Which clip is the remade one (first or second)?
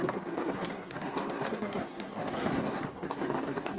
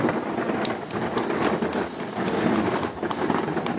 first